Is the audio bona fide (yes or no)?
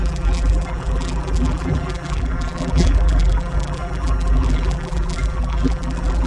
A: no